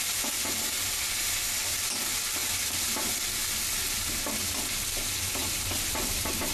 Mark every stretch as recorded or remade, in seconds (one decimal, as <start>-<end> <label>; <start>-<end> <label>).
0.0-2.4 recorded; 2.4-3.8 remade; 3.8-5.4 recorded; 5.4-6.5 remade